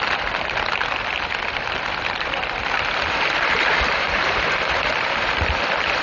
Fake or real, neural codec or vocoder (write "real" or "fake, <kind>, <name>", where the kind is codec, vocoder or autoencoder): fake, vocoder, BigVGAN v2